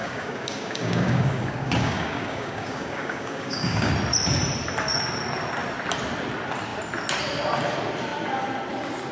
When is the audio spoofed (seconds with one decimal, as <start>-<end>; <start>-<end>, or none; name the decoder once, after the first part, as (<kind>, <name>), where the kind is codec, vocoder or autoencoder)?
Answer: 0.0-3.9 (codec, DAC)